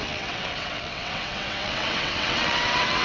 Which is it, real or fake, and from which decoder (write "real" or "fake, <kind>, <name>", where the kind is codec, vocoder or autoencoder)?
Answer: fake, vocoder, WaveNeXt